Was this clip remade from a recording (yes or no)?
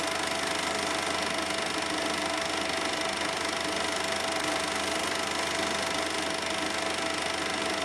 no